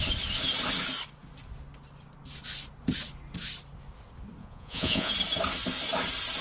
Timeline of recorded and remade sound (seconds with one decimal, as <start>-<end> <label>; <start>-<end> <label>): 0.0-4.4 recorded; 4.4-5.1 remade; 5.1-6.4 recorded